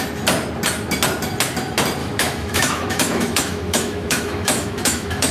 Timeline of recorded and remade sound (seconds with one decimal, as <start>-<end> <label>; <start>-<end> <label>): 0.0-2.0 recorded; 2.0-5.3 remade